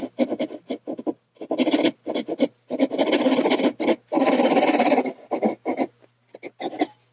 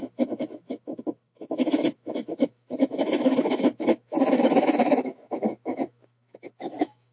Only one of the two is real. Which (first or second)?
first